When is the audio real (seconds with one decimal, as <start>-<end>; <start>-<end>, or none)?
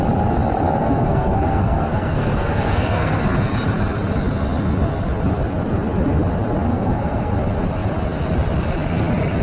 0.0-0.8; 3.2-6.7; 7.3-9.4